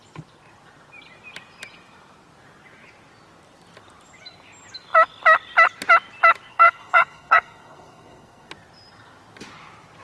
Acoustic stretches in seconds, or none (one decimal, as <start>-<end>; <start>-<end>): 0.0-6.5; 8.5-10.0